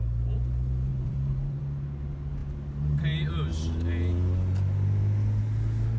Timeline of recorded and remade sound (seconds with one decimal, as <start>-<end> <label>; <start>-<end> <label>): 0.0-0.9 recorded; 0.9-1.6 remade; 1.6-6.0 recorded